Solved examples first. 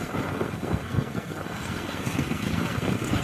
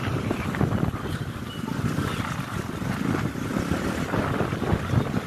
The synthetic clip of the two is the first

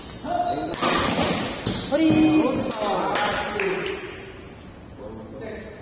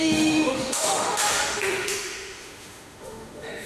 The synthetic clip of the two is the second